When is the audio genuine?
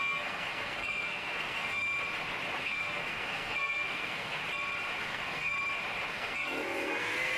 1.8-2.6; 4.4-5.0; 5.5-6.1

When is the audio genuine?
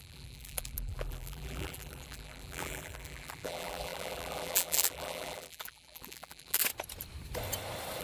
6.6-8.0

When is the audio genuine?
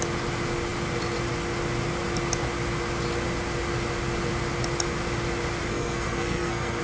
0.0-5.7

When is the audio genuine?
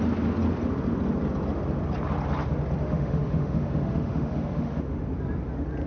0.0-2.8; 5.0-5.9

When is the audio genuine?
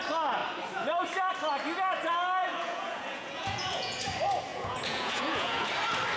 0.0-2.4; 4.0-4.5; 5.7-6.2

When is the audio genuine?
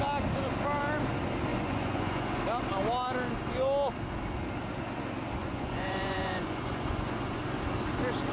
0.0-1.5; 2.4-5.4; 7.4-8.3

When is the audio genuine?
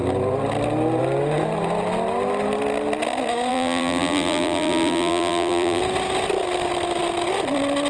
0.0-3.5; 5.8-7.9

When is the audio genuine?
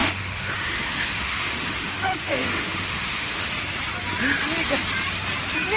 3.5-5.8